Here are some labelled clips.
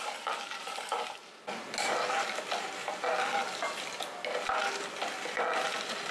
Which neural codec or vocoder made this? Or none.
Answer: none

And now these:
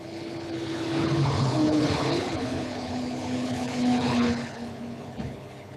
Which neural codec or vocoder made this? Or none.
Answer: codec, HILCodec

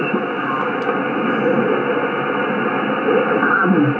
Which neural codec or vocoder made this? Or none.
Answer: none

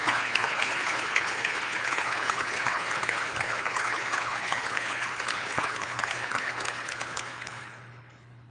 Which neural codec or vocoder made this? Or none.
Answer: codec, HILCodec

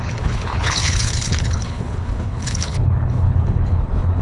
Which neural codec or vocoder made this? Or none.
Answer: codec, HILCodec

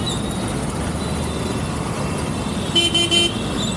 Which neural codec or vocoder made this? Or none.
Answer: none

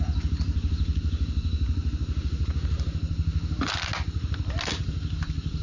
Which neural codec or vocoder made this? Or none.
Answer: none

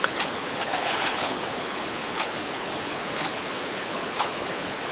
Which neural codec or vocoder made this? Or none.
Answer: codec, HILCodec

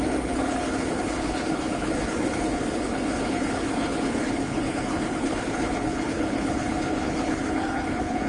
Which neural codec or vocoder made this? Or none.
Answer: codec, HILCodec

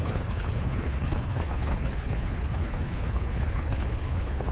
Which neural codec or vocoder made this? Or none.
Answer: codec, HILCodec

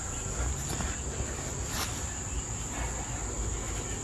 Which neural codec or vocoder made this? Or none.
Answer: none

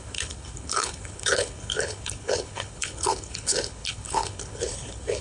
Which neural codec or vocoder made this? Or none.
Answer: codec, HILCodec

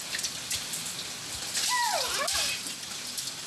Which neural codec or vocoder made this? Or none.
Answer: none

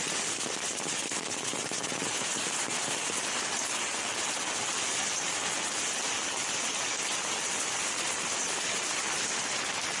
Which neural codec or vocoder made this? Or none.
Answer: none